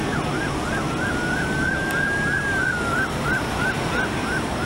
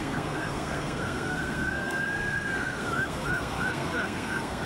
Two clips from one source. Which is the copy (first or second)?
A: second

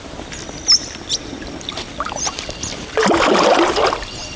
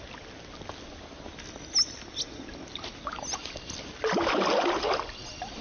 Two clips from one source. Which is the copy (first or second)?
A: first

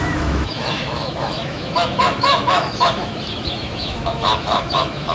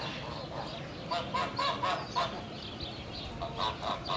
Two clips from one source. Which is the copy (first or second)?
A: first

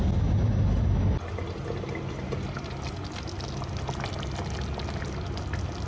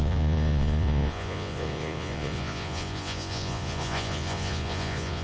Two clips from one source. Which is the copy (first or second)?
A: second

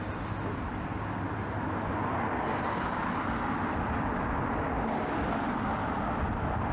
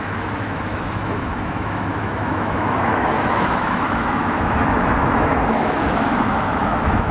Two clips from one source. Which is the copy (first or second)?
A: second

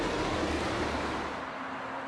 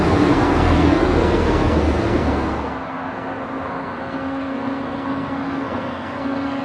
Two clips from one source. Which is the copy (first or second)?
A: second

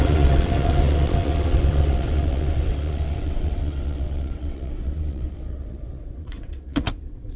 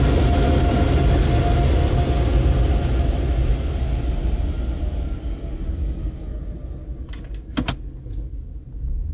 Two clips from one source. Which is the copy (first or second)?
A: first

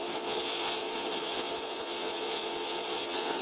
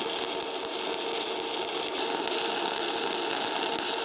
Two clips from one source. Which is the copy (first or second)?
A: first